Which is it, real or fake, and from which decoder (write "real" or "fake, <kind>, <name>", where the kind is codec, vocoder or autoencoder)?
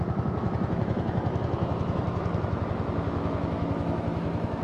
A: fake, autoencoder, DAC-VAE